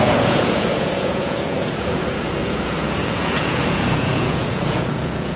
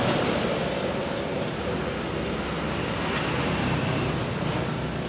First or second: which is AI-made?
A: first